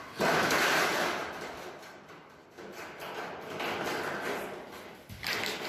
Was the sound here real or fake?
real